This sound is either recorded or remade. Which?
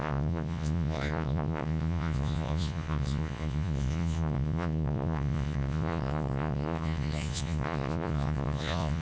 remade